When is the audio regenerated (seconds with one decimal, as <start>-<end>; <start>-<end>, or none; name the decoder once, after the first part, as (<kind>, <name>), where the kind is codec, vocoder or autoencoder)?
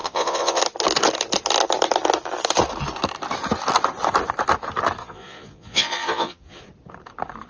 0.0-0.6 (vocoder, Vocos); 5.0-6.6